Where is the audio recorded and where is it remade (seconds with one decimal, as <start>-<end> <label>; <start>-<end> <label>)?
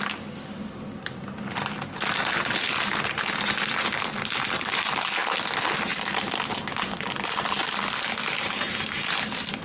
0.0-9.6 recorded